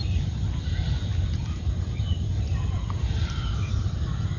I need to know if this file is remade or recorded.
recorded